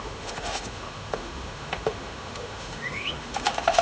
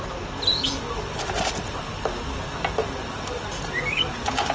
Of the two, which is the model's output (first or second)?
first